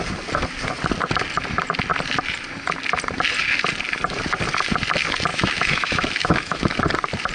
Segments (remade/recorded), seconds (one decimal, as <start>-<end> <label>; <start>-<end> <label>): 0.0-5.3 recorded; 5.3-6.8 remade; 6.8-7.3 recorded